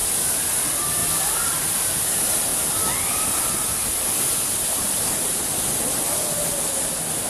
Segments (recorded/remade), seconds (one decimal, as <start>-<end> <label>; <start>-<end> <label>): 0.0-1.0 recorded; 1.0-1.9 remade; 1.9-2.5 recorded; 2.5-7.3 remade